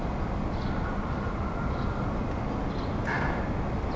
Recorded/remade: recorded